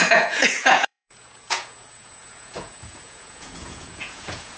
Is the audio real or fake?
fake